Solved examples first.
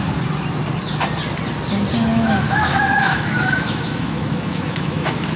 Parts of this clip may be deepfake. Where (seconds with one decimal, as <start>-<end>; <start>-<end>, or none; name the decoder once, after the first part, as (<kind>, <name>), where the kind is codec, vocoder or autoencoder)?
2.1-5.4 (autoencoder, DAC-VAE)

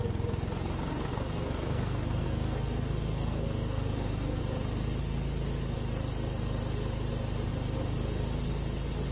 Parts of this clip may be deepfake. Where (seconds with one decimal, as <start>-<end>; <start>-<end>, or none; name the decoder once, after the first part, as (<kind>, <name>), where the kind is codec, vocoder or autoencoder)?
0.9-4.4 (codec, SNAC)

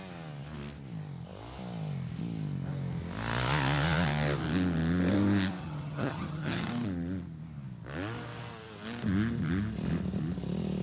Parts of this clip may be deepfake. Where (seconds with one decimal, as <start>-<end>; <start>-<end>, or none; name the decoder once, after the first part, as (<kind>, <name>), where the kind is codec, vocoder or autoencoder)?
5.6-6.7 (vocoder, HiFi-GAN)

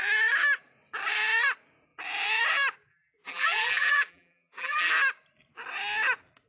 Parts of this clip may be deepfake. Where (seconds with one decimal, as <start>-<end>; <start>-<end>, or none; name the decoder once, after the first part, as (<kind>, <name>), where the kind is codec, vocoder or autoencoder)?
2.9-4.9 (vocoder, BigVGAN v2)

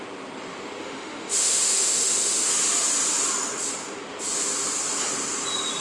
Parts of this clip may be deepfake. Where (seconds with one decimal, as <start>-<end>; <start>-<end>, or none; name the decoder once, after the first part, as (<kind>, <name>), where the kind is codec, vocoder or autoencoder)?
0.8-2.5 (autoencoder, DAC-VAE)